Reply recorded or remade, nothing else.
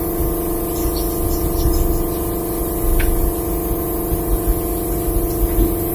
recorded